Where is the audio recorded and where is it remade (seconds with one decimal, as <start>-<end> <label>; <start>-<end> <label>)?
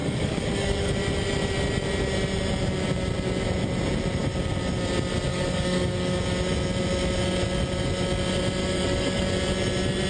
0.0-0.9 remade; 0.9-5.3 recorded; 5.3-6.2 remade; 6.2-8.6 recorded; 8.6-9.2 remade; 9.2-10.1 recorded